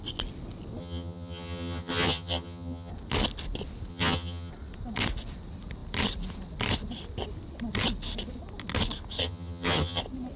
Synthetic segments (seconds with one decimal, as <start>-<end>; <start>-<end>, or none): 0.8-2.9; 3.9-4.5; 9.2-10.0